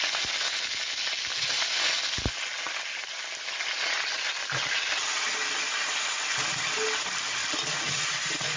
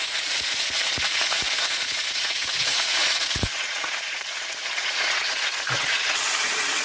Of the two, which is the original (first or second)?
first